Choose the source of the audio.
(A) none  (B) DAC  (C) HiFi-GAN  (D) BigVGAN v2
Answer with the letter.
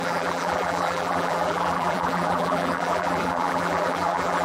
D